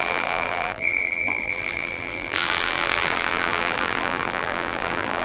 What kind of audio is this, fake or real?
fake